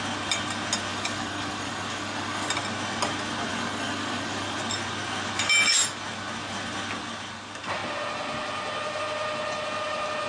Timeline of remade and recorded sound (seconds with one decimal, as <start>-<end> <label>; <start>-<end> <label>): 0.0-0.9 recorded; 0.9-2.5 remade; 2.5-3.5 recorded; 3.5-4.6 remade; 4.6-10.3 recorded